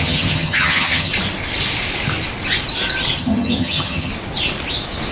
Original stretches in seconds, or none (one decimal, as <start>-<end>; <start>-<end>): 1.1-3.2; 4.1-5.1